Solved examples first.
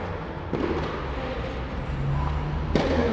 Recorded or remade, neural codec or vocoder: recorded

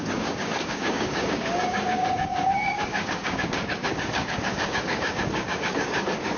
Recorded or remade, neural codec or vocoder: remade, codec, DAC